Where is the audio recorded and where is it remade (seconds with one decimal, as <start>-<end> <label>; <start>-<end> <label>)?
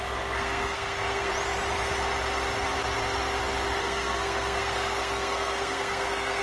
0.0-1.3 remade; 1.3-3.8 recorded; 3.8-6.4 remade